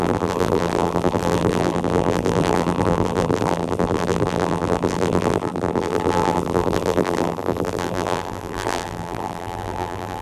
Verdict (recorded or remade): remade